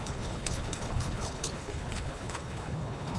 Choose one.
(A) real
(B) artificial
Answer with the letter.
B